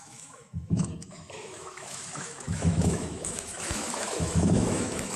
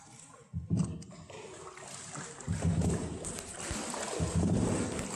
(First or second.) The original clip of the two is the second